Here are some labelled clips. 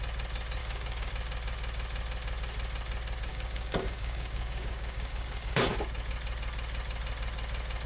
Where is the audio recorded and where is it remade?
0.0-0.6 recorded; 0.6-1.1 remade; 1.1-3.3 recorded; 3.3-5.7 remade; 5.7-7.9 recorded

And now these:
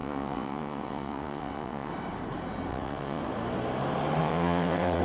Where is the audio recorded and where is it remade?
0.0-1.9 remade; 1.9-2.7 recorded; 2.7-3.2 remade; 3.2-4.2 recorded; 4.2-5.0 remade